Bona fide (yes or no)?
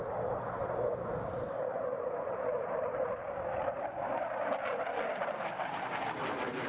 yes